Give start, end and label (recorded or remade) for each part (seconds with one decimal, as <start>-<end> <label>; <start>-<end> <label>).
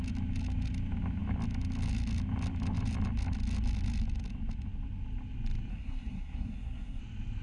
0.0-5.7 recorded; 5.7-7.0 remade; 7.0-7.4 recorded